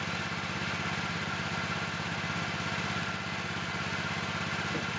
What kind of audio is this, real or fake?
real